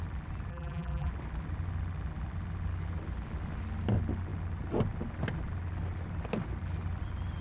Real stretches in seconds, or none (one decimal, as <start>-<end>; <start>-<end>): 0.0-0.5; 1.1-7.4